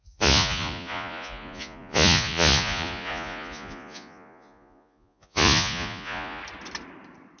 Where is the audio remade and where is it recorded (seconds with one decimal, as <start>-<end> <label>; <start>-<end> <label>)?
0.0-6.4 remade; 6.4-7.4 recorded